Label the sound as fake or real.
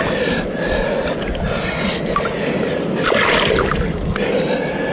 real